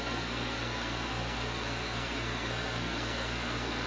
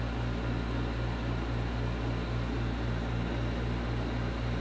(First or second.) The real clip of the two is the second